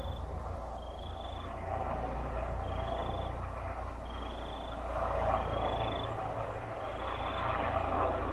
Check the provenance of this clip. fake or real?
real